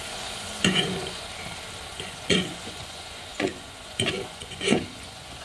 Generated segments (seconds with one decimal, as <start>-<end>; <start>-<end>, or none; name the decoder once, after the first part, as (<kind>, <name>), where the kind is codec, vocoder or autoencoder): 0.0-1.3 (vocoder, Vocos); 1.9-5.4